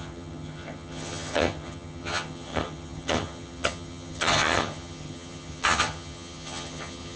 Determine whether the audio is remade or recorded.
remade